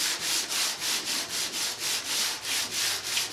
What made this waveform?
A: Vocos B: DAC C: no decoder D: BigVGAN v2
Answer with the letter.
C